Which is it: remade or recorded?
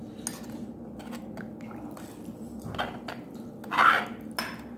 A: recorded